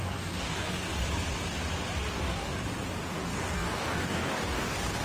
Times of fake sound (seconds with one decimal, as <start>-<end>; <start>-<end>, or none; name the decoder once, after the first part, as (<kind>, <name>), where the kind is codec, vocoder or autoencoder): 0.0-0.9 (codec, DAC); 2.1-2.5; 3.1-5.0